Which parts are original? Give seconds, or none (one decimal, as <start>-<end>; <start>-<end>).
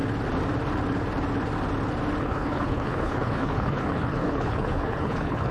0.0-2.2